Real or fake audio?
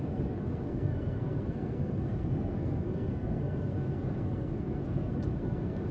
fake